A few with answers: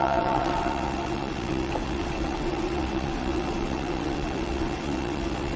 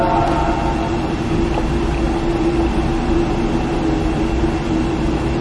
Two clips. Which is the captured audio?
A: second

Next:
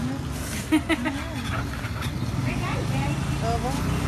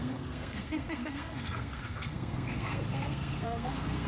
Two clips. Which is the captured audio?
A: first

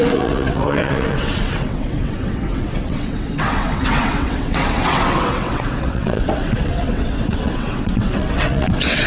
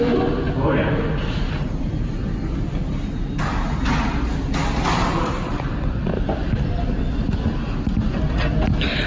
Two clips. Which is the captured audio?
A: second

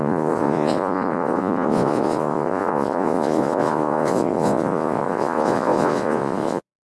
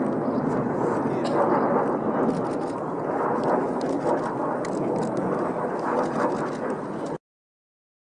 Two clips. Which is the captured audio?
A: second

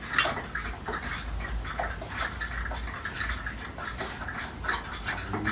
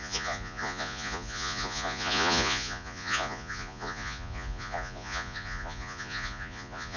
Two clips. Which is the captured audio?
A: first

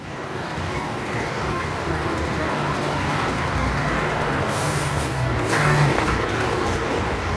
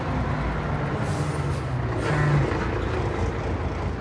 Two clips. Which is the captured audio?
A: second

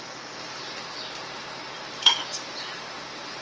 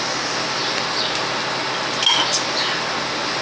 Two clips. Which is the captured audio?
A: second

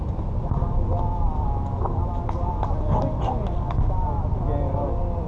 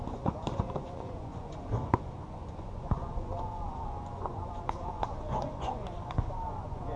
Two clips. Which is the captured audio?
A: first